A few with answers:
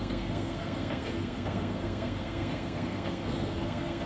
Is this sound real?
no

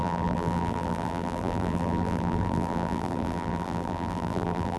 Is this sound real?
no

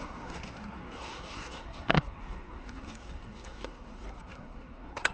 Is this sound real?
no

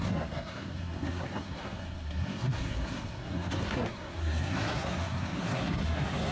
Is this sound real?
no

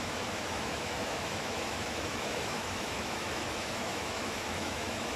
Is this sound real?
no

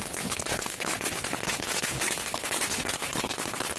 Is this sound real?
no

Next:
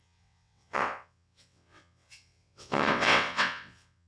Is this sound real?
no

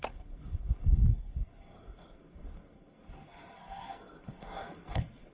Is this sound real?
no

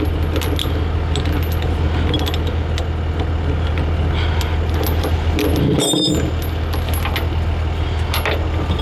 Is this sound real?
yes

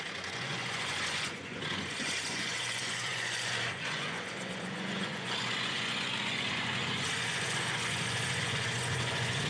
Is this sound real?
no